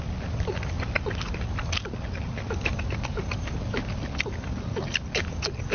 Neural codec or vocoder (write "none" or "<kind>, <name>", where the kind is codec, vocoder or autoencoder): none